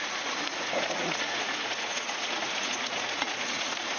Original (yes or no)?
no